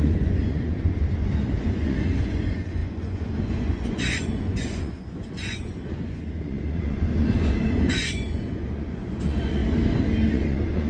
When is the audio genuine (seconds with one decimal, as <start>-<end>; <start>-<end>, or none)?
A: 9.6-10.3